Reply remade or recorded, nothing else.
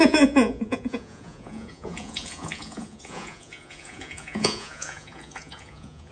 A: remade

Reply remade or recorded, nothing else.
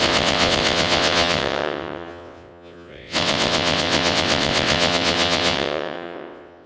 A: remade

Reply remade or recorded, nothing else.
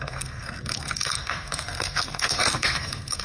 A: remade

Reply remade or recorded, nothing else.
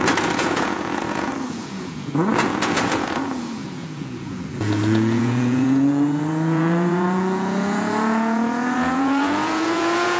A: remade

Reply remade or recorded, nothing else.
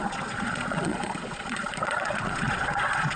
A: remade